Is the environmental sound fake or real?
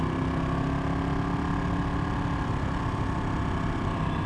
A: real